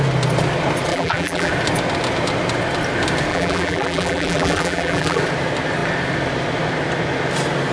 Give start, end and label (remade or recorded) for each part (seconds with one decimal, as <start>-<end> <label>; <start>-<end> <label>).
0.0-0.9 recorded; 0.9-1.5 remade; 1.5-3.3 recorded; 3.3-5.2 remade; 5.2-7.7 recorded

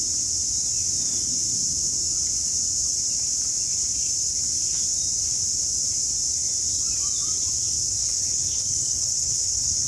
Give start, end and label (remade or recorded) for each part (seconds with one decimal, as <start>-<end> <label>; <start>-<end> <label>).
0.0-8.0 recorded; 8.0-9.9 remade